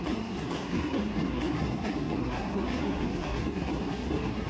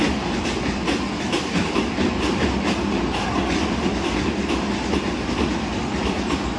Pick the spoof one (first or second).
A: first